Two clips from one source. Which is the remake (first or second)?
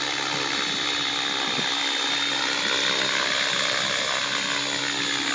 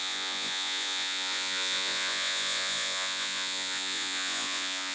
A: second